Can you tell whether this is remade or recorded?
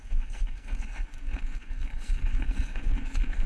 remade